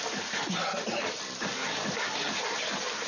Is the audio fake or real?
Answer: fake